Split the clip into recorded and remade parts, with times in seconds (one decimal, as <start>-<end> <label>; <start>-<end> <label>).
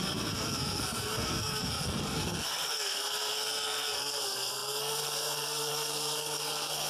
0.0-6.9 remade